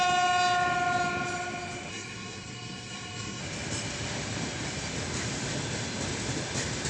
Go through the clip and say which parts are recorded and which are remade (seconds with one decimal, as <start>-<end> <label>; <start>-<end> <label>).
0.0-1.9 recorded; 1.9-3.4 remade; 3.4-6.9 recorded